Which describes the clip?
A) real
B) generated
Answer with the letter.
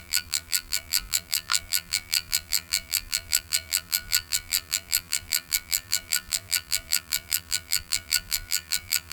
B